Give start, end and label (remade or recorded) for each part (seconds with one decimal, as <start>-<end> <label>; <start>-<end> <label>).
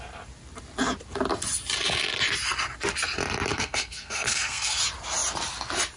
0.0-3.5 recorded; 3.5-4.8 remade; 4.8-6.0 recorded